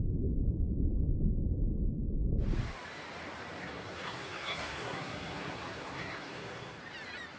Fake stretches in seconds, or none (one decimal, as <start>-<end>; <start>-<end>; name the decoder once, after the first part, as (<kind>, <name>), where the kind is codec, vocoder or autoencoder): 3.6-6.8 (codec, SNAC)